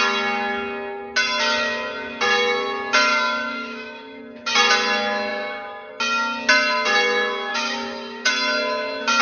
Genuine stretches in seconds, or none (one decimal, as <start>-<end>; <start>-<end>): 0.0-3.1; 4.2-5.3; 5.9-7.5; 8.3-9.2